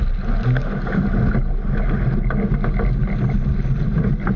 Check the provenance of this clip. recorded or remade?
recorded